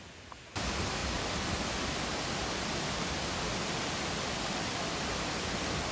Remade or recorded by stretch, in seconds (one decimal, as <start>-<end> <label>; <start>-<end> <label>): 0.0-5.9 recorded